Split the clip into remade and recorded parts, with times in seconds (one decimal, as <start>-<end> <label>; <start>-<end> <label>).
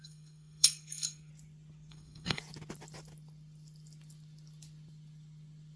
0.0-1.3 remade; 1.3-1.9 recorded; 1.9-2.4 remade; 2.4-5.8 recorded